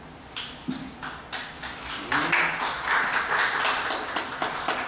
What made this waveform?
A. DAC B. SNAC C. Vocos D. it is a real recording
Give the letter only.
D